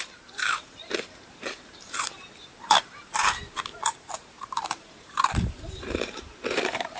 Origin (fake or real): fake